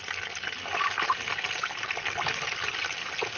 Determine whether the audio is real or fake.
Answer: real